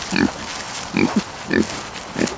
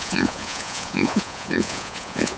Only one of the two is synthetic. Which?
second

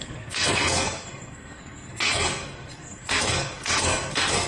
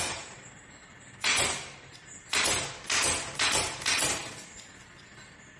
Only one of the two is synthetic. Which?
first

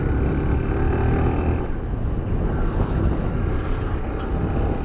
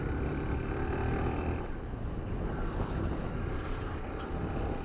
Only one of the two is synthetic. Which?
second